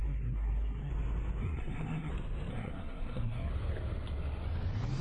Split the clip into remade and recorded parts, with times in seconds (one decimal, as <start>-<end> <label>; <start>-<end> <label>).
0.0-0.9 remade; 0.9-1.4 recorded; 1.4-2.1 remade; 2.1-2.5 recorded; 2.5-3.5 remade; 3.5-5.0 recorded